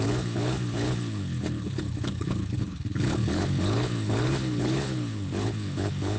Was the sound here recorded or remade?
remade